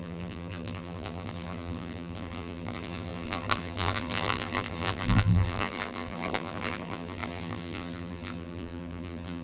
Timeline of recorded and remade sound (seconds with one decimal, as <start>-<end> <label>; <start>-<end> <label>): 0.0-9.4 remade